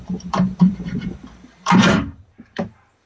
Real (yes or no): no